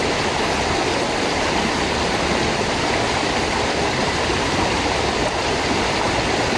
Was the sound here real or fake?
real